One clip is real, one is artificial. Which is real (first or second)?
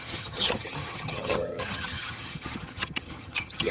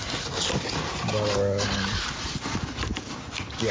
second